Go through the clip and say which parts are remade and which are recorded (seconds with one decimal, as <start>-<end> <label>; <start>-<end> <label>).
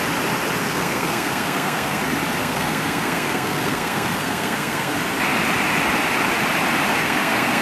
0.0-0.6 recorded; 0.6-2.0 remade; 2.0-2.4 recorded; 2.4-5.0 remade; 5.0-7.0 recorded; 7.0-7.6 remade